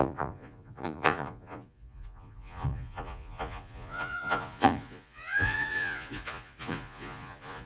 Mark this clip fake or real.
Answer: fake